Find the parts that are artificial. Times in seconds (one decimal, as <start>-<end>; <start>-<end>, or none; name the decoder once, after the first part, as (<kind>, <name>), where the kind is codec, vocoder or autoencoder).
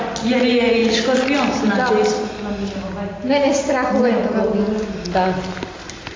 none